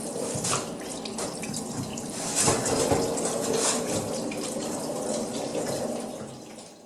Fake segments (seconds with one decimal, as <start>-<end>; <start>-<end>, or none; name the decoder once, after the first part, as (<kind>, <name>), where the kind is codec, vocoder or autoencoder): none